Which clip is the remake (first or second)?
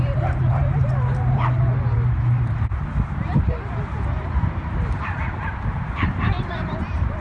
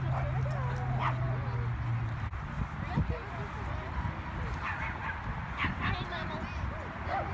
first